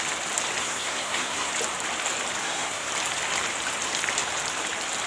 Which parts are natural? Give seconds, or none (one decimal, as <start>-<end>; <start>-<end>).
0.0-0.6; 1.5-2.4; 2.9-5.1